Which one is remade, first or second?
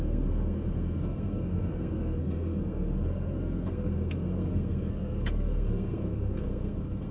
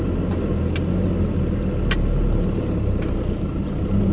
first